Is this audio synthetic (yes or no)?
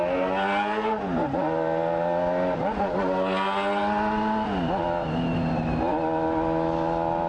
no